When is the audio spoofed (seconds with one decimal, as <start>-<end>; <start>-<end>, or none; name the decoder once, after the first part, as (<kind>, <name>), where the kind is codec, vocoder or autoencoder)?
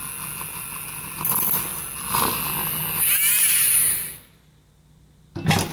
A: none